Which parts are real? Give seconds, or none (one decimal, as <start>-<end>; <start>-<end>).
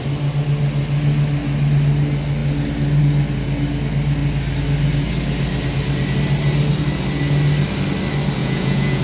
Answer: 0.0-8.4